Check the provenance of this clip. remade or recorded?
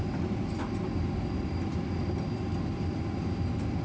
recorded